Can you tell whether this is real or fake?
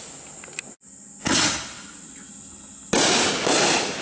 real